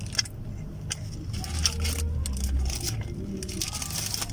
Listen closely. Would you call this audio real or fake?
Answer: real